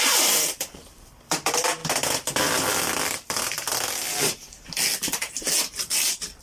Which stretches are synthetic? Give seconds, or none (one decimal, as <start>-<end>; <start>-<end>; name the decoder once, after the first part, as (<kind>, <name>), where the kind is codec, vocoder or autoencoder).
0.0-1.8 (vocoder, BigVGAN v2); 5.6-6.4